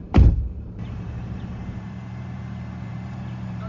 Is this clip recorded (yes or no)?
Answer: no